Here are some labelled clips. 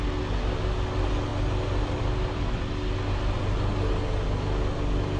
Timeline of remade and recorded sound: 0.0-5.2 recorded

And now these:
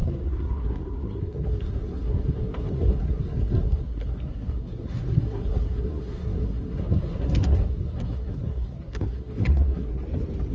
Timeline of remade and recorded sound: 0.0-9.9 remade; 9.9-10.5 recorded

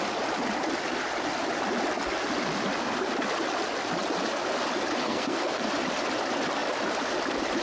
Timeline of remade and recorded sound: 0.0-5.0 recorded; 5.0-5.6 remade; 5.6-7.6 recorded

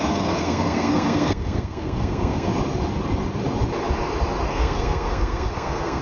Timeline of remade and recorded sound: 0.0-2.5 remade; 2.5-4.5 recorded; 4.5-6.0 remade